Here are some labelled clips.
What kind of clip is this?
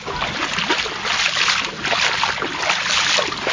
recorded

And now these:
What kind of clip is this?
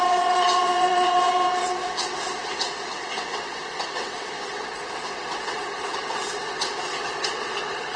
remade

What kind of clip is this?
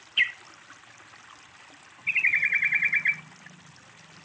recorded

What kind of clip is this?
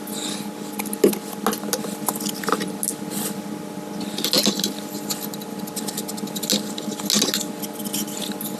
recorded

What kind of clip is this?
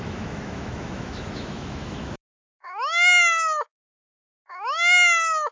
remade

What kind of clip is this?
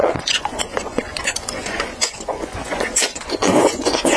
remade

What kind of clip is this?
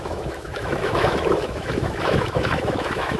remade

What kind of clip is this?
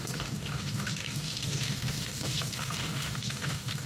remade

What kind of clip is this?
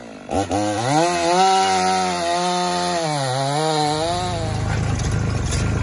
recorded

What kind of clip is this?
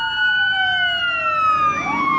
recorded